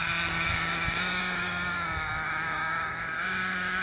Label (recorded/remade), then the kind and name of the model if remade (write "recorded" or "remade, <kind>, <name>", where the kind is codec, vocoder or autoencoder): remade, codec, DAC